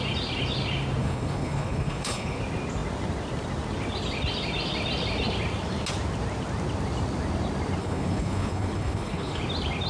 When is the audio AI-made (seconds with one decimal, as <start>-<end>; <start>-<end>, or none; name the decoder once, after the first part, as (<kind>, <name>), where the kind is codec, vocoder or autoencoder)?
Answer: 1.0-2.4 (codec, HILCodec); 7.8-9.4